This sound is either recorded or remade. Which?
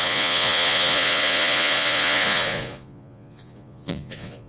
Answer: remade